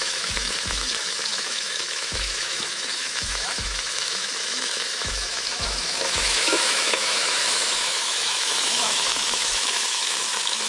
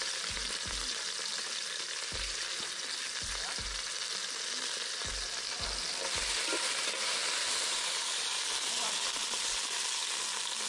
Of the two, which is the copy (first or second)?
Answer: first